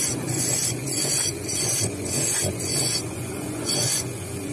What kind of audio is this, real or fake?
fake